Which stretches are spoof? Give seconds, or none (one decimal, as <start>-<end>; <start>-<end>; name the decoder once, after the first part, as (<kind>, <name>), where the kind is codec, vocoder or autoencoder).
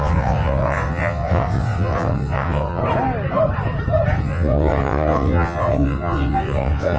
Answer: 0.0-2.8 (vocoder, WaveNeXt); 4.2-7.0